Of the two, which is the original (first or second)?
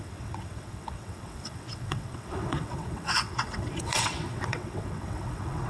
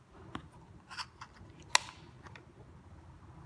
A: second